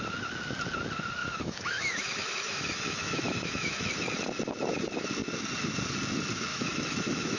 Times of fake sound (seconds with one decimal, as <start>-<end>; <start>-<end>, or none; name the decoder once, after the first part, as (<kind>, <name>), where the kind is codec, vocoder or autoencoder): 1.2-3.9 (autoencoder, DAC-VAE); 6.5-7.4